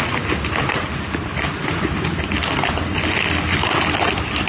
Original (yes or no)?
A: no